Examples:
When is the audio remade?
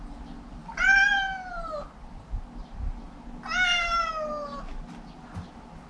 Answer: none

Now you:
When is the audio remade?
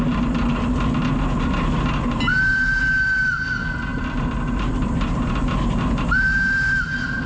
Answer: none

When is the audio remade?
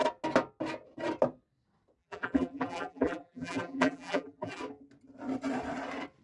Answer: 2.0-4.6 (vocoder, BigVGAN v2)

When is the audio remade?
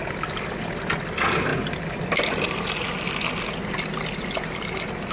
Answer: none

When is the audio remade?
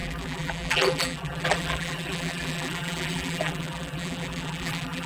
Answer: 0.0-5.1 (vocoder, BigVGAN v2)